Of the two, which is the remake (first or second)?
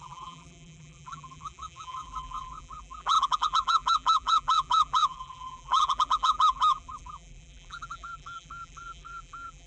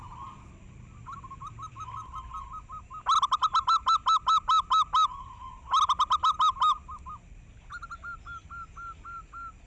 first